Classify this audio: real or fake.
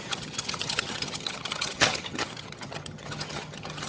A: fake